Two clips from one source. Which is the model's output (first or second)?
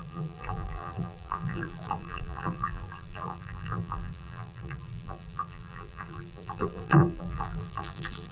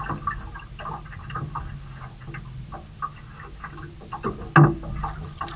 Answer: first